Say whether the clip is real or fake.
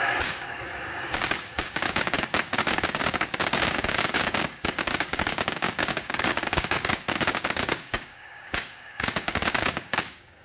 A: fake